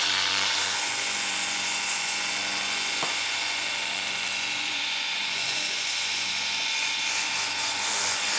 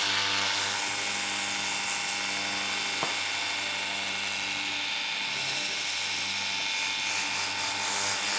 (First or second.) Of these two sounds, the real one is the second